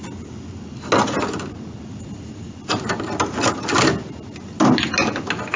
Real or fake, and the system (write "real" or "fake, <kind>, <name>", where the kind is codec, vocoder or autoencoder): real